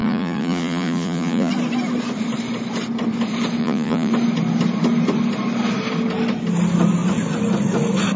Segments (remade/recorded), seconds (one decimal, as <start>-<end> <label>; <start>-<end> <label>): 0.0-1.5 remade; 1.5-3.6 recorded; 3.6-4.1 remade; 4.1-8.2 recorded